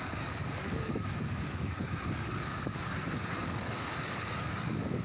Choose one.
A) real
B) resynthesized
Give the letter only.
B